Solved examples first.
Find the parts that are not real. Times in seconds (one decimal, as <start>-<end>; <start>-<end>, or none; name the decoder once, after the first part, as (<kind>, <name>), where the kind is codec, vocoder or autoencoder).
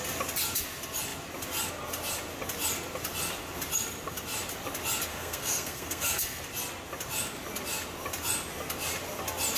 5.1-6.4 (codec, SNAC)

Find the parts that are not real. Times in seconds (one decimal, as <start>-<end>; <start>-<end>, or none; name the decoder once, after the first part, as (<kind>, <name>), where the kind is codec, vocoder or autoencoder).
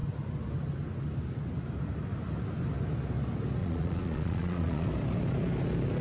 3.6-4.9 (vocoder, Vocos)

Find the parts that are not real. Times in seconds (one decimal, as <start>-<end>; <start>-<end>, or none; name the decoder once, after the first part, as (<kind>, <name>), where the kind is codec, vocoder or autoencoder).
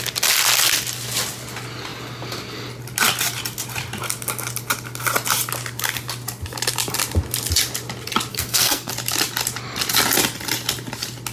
8.3-8.9 (codec, SNAC)